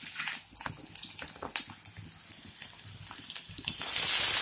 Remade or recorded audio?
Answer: recorded